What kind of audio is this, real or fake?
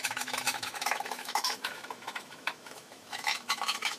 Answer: fake